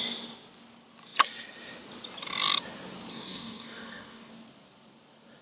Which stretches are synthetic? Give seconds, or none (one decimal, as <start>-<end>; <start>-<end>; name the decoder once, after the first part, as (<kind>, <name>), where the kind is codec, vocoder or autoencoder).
3.1-4.3 (codec, DAC)